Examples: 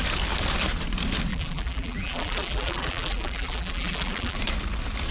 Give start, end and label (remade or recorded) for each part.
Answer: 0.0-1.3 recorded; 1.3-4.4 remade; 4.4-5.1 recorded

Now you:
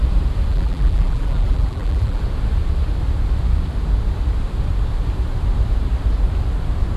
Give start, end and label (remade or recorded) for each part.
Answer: 0.0-0.5 recorded; 0.5-2.2 remade; 2.2-7.0 recorded

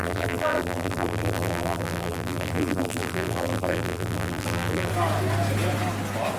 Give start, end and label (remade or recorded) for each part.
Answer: 0.0-4.9 remade; 4.9-6.4 recorded

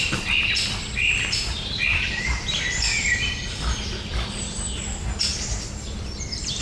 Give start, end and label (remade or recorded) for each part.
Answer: 0.0-4.8 remade; 4.8-5.3 recorded; 5.3-6.6 remade

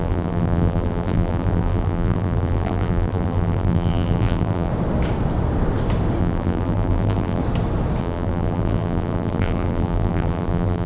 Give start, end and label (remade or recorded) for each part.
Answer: 0.0-4.7 remade; 4.7-6.2 recorded; 6.2-7.4 remade; 7.4-8.0 recorded; 8.0-10.9 remade